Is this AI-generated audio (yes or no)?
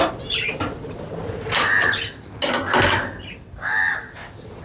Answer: no